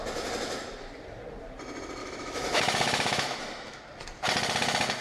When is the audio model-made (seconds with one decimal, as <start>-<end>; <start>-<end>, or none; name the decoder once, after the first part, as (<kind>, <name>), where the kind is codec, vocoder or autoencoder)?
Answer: 2.0-3.8 (autoencoder, DAC-VAE)